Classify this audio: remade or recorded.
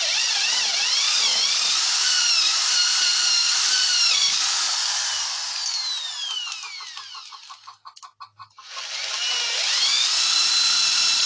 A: recorded